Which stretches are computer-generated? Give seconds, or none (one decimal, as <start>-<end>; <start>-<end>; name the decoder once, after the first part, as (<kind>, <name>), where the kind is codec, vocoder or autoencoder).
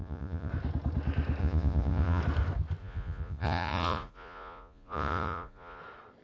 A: 0.0-0.5 (vocoder, Vocos); 1.4-2.2; 2.8-5.8